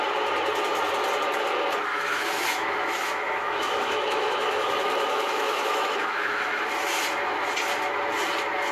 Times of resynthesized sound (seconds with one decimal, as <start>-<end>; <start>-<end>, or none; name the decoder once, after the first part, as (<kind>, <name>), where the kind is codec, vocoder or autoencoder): 1.9-6.6 (autoencoder, DAC-VAE)